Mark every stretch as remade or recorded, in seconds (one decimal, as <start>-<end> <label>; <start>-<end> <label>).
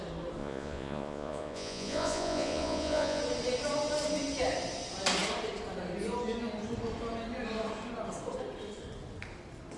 0.0-0.4 recorded; 0.4-3.2 remade; 3.2-9.8 recorded